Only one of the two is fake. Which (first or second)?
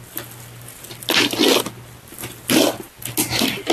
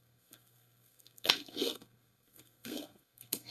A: second